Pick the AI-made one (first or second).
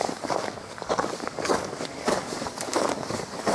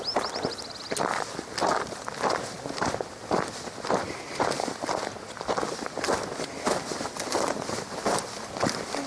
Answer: first